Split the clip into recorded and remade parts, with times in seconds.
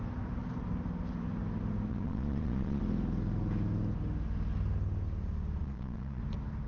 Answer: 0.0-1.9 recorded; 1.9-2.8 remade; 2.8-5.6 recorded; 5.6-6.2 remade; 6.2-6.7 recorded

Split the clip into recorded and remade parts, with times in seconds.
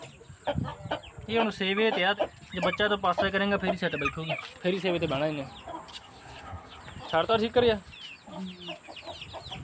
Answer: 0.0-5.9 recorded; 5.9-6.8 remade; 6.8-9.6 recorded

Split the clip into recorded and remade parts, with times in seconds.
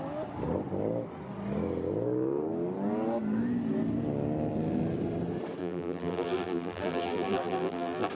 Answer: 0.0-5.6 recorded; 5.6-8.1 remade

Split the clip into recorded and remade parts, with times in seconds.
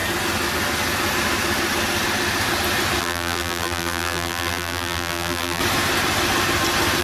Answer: 0.0-3.0 recorded; 3.0-5.6 remade; 5.6-7.0 recorded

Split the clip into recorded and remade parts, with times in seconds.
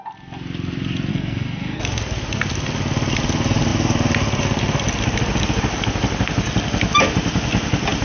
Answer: 0.0-1.1 recorded; 1.1-1.8 remade; 1.8-8.0 recorded